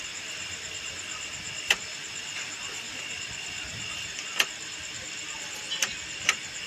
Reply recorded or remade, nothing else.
recorded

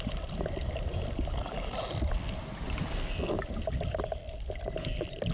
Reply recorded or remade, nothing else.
remade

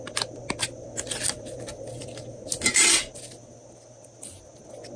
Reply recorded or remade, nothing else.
recorded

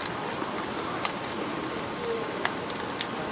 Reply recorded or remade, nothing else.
recorded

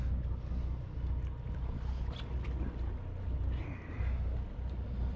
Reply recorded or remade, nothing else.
recorded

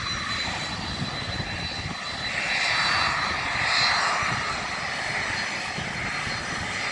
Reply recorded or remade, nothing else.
recorded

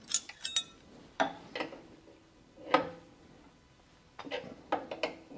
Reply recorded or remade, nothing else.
recorded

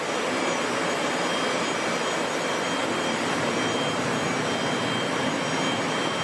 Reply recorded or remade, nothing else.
recorded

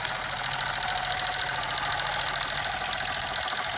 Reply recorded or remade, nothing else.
recorded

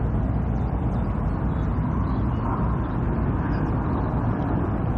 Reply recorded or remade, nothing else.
recorded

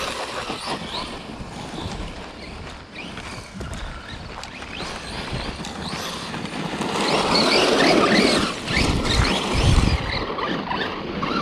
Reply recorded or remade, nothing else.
recorded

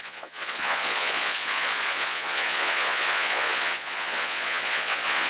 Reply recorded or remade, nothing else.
remade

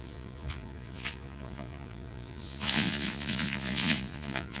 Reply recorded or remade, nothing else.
remade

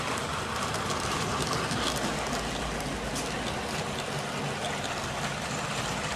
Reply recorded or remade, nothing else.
recorded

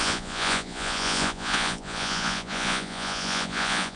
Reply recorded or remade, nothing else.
remade